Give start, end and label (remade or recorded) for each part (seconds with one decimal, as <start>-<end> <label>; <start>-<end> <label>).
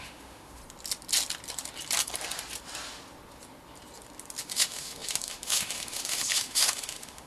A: 0.0-0.6 remade; 0.6-4.4 recorded; 4.4-7.3 remade